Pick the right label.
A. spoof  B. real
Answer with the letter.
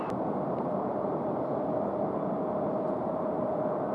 A